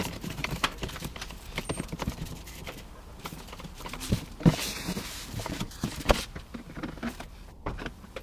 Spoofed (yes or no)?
yes